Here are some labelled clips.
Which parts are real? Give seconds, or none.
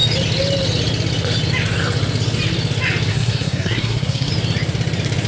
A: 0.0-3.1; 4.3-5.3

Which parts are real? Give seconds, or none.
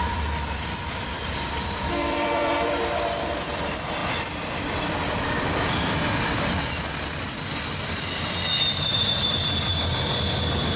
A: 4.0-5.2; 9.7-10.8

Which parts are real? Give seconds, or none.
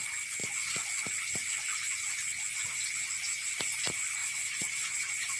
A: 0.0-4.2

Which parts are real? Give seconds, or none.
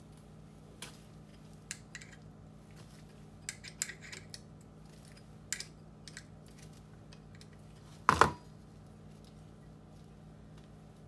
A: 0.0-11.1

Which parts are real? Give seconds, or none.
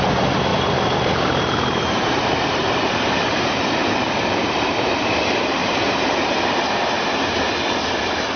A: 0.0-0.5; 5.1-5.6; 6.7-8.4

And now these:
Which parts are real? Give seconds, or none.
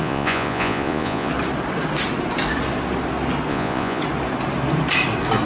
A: 1.3-3.5; 4.0-5.5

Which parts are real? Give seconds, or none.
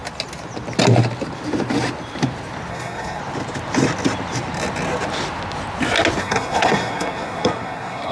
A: 0.0-2.7; 3.2-6.2